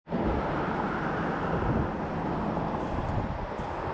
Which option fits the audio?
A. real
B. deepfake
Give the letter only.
A